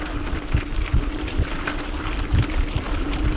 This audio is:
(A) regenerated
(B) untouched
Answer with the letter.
B